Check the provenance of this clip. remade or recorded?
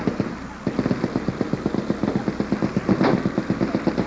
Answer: recorded